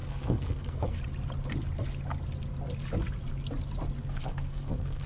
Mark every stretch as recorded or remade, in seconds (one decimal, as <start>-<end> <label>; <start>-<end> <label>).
0.0-1.0 remade; 1.0-4.1 recorded; 4.1-5.1 remade